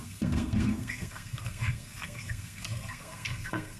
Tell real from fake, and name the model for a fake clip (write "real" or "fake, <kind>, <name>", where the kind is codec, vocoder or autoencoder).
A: fake, codec, SNAC